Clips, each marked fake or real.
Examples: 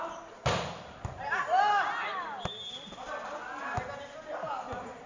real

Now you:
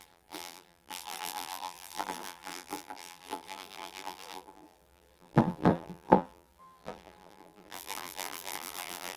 fake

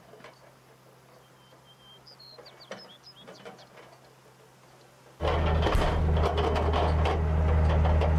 real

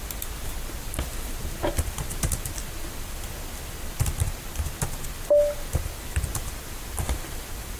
real